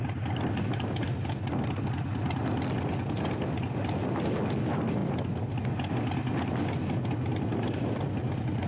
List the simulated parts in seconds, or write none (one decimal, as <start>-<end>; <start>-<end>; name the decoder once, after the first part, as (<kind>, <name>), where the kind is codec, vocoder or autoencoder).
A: none